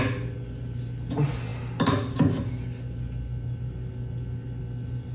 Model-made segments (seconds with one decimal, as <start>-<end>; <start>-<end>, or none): none

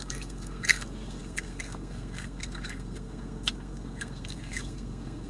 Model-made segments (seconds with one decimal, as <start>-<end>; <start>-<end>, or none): 0.0-5.3

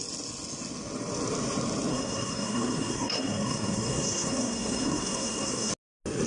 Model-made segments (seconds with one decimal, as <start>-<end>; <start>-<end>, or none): 1.9-5.7